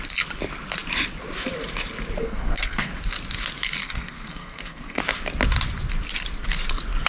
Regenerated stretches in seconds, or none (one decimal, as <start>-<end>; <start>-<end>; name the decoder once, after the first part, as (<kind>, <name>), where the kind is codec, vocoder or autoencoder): 2.2-2.9 (codec, SNAC); 3.8-5.0